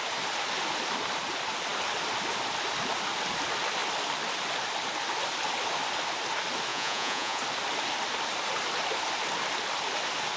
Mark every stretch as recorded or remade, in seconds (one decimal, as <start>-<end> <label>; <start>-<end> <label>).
0.0-6.7 recorded; 6.7-7.4 remade; 7.4-10.4 recorded